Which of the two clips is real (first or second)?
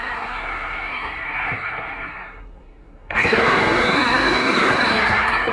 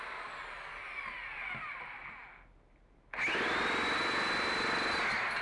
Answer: second